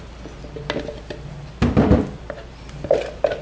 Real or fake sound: real